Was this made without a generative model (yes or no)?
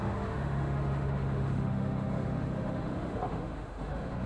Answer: no